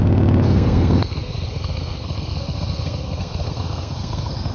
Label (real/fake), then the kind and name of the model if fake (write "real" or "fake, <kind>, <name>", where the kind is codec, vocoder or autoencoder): fake, codec, SNAC